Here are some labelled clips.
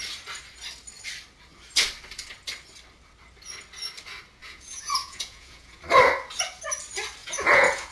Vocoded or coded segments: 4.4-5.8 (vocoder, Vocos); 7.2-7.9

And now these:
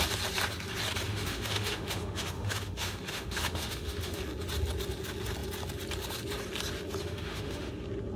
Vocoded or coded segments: 1.1-4.2 (autoencoder, DAC-VAE); 7.0-7.7

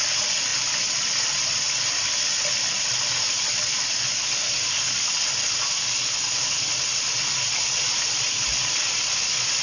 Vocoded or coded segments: none

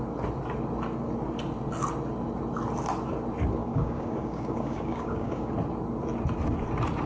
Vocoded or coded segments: 3.6-5.5 (codec, DAC)